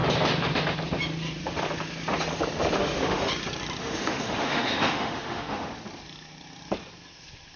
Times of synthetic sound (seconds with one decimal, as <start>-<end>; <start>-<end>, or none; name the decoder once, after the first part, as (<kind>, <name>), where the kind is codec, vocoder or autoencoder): 2.8-3.3 (autoencoder, DAC-VAE); 3.8-5.7